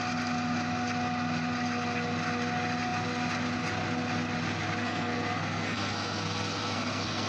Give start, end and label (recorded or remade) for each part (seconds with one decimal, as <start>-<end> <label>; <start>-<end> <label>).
0.0-4.8 recorded; 4.8-7.3 remade